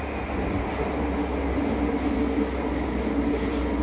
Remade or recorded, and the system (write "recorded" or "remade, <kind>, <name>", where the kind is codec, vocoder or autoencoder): recorded